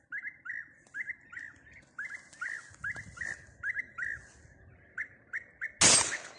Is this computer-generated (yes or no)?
no